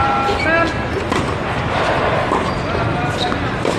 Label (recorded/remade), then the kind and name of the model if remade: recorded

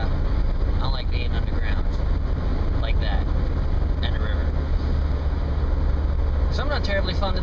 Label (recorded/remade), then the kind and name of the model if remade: recorded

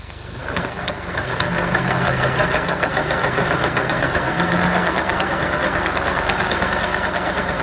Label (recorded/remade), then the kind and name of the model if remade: remade, codec, SNAC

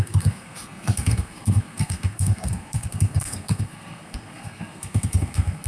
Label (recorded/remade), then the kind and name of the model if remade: remade, codec, SNAC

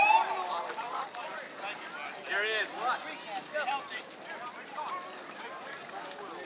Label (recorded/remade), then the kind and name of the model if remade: recorded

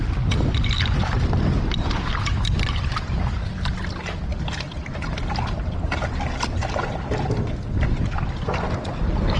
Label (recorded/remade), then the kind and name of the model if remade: recorded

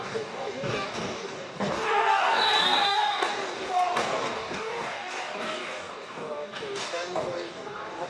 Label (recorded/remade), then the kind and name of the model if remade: remade, codec, DAC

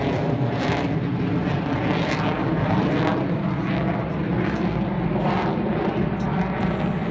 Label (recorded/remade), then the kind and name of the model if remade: recorded